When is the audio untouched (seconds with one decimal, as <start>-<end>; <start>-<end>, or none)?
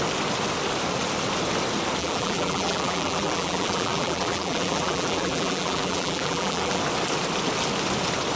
0.0-2.0; 6.8-8.4